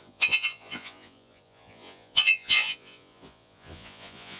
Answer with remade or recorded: remade